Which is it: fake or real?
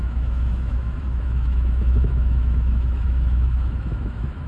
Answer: fake